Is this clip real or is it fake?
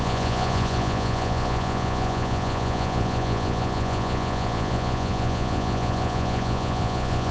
fake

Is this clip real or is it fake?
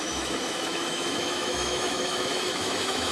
fake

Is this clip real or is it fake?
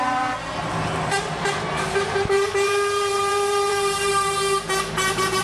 fake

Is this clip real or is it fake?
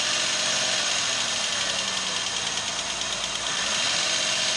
real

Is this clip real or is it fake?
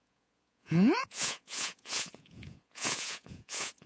fake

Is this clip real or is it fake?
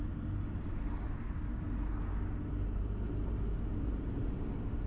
real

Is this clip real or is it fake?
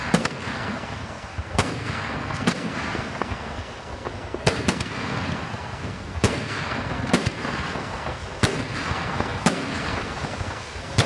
fake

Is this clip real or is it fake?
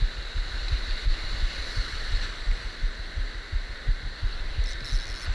real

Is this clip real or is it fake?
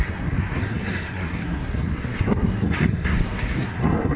fake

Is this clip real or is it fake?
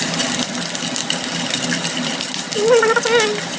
fake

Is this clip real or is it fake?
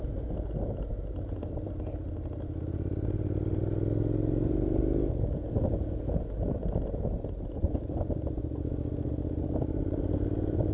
real